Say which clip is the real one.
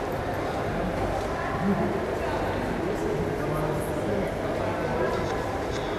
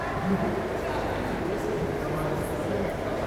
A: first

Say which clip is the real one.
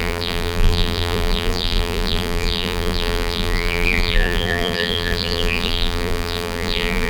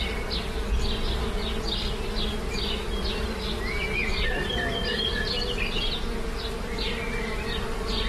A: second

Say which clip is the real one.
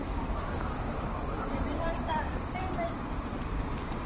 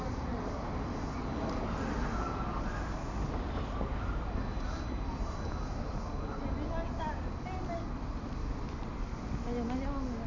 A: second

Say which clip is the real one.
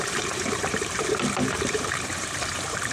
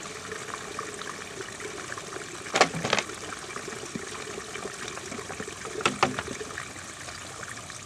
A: second